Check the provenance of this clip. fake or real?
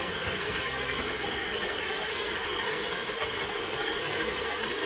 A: fake